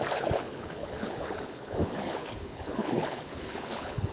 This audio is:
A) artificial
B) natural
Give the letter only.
A